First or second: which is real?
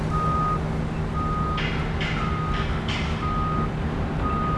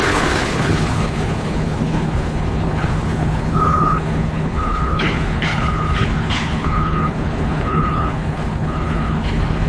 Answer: first